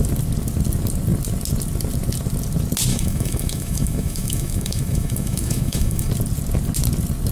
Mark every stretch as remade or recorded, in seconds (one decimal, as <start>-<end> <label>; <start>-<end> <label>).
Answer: 0.0-2.9 recorded; 2.9-6.1 remade; 6.1-7.3 recorded